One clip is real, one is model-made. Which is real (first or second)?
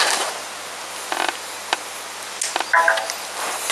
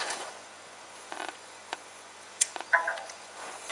first